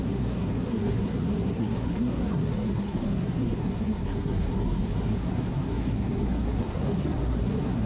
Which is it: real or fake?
fake